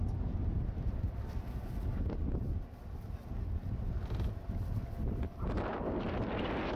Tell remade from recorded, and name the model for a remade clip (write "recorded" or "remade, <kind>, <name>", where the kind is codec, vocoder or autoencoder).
recorded